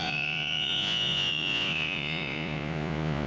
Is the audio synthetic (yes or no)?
yes